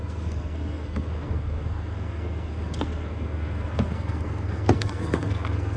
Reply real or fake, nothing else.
fake